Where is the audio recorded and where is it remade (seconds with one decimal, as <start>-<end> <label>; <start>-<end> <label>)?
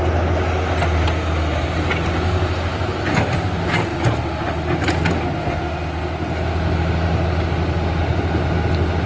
0.0-9.1 recorded